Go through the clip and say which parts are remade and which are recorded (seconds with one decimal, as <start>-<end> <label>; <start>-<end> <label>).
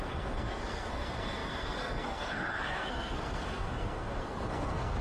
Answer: 0.0-5.0 remade